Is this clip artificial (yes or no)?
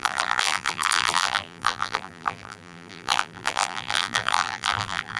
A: yes